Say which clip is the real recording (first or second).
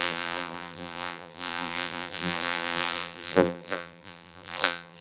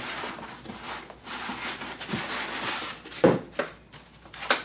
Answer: second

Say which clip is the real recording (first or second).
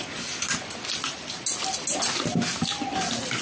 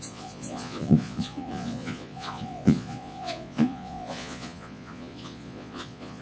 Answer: first